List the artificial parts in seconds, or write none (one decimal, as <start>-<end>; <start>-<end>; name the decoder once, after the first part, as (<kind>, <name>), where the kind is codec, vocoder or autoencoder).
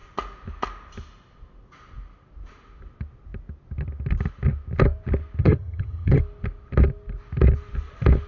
5.4-6.2 (vocoder, HiFi-GAN)